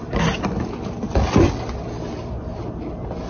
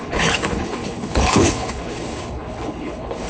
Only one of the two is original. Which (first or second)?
first